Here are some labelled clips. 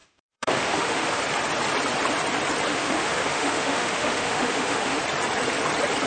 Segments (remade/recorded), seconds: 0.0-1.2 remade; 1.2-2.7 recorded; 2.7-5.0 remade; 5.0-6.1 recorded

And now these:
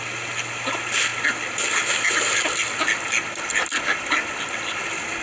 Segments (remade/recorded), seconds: 0.0-5.2 recorded

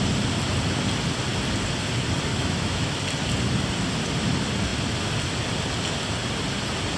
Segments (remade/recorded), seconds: 0.0-2.3 recorded; 2.3-3.0 remade; 3.0-7.0 recorded

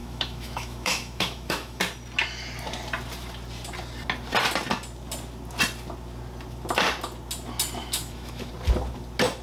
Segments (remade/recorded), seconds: 0.0-1.8 remade; 1.8-7.8 recorded; 7.8-8.5 remade; 8.5-9.4 recorded

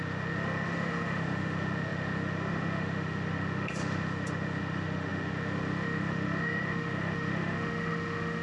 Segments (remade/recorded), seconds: 0.0-8.4 remade